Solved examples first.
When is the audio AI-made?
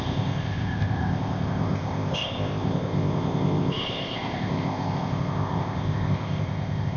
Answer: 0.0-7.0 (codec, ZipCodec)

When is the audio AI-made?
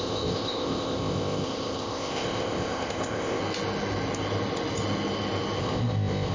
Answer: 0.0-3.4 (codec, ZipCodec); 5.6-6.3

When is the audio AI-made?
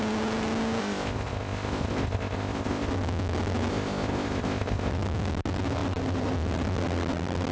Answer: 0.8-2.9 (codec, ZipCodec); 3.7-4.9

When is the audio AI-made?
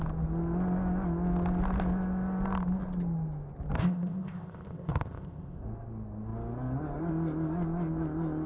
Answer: 3.8-5.6 (codec, ZipCodec)